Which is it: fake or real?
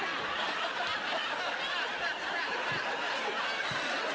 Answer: real